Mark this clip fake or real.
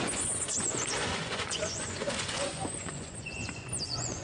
fake